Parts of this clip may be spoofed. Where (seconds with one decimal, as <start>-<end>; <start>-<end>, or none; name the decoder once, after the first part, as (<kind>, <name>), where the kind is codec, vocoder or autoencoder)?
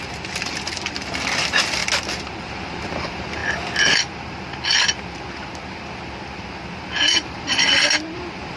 0.0-1.8 (vocoder, BigVGAN v2); 2.3-3.4; 6.9-8.6